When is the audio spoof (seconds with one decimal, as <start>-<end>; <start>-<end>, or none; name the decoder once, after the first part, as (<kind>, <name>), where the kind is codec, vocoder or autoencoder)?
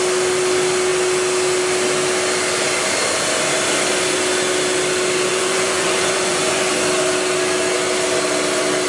5.3-6.7 (vocoder, Vocos)